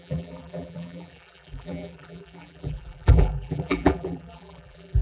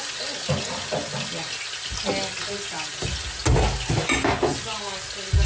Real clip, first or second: second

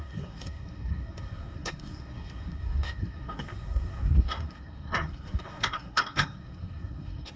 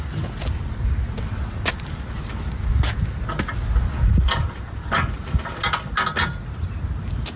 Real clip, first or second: second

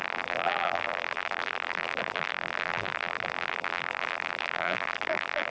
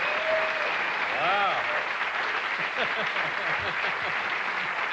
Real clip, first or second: second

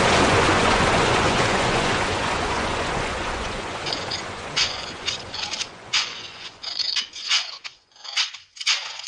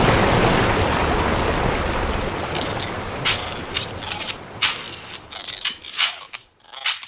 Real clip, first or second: second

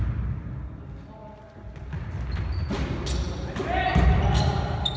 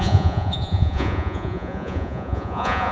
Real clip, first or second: first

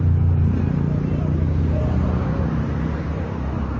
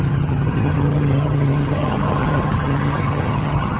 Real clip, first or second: first